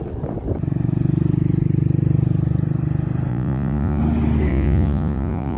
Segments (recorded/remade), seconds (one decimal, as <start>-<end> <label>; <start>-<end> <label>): 0.0-3.3 recorded; 3.3-4.0 remade; 4.0-4.5 recorded; 4.5-5.6 remade